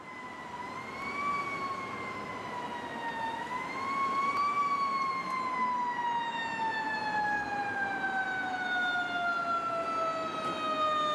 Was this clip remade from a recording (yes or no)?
no